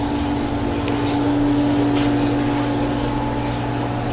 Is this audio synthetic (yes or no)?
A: no